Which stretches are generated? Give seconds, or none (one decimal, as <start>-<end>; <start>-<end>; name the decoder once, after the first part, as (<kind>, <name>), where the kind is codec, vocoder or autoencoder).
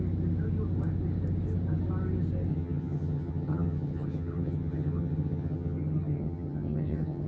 2.5-7.3 (vocoder, HiFi-GAN)